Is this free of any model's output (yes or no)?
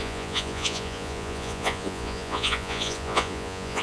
no